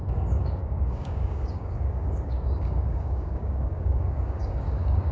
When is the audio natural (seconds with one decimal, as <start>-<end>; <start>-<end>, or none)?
none